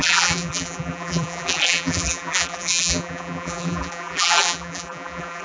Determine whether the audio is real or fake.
fake